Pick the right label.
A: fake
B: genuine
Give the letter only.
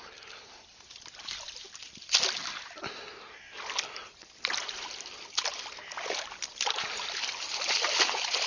B